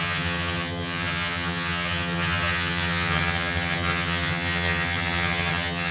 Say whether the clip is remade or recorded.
remade